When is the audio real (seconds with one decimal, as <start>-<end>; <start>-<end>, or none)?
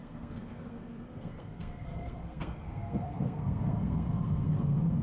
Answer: none